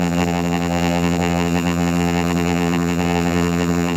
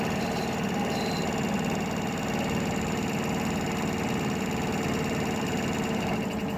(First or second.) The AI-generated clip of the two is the first